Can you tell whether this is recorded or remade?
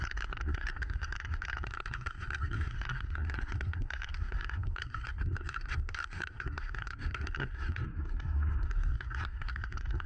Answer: remade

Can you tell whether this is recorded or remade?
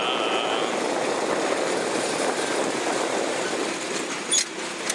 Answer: recorded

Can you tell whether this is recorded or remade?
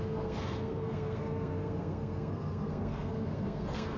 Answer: remade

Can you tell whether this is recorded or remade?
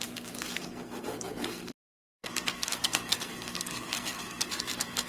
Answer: remade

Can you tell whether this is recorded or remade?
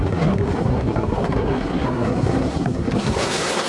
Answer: remade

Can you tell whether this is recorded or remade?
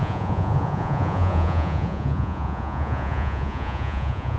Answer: remade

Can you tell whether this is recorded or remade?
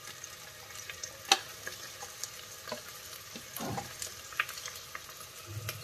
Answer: recorded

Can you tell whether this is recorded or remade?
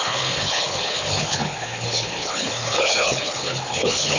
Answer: remade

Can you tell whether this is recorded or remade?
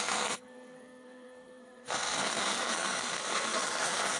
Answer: remade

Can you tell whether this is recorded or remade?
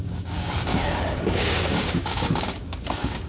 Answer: remade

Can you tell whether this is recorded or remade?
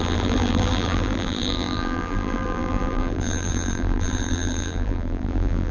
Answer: remade